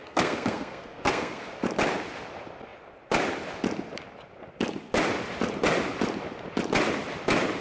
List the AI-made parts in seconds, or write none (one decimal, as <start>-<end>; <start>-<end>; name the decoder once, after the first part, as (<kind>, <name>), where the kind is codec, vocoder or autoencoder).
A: 0.0-1.5 (codec, SNAC)